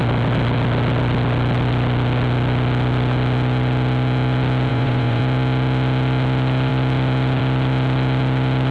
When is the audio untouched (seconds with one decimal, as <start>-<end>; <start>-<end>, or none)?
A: 0.0-4.7; 5.2-8.7